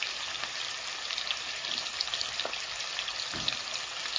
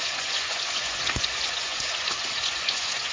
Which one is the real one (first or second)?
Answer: first